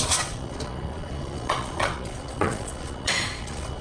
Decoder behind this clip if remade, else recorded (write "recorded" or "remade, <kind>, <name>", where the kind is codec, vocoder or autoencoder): remade, vocoder, Vocos